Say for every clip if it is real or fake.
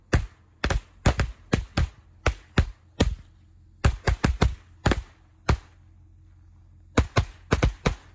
real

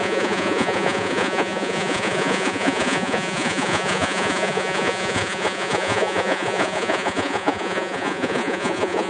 fake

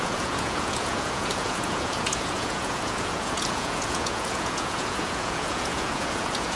fake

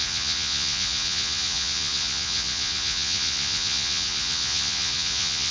fake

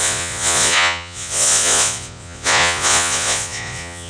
fake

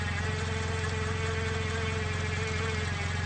real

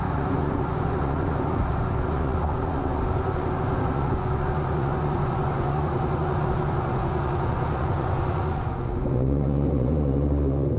fake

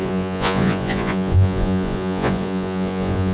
fake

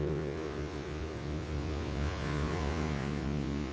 fake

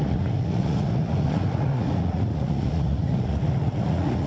fake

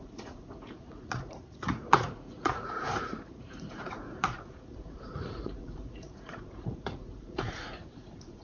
fake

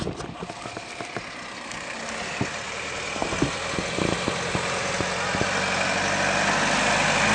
real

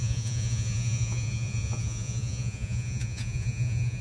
fake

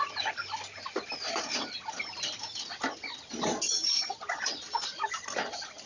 real